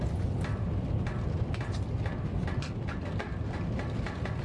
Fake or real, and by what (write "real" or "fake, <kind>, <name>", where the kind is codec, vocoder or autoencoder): real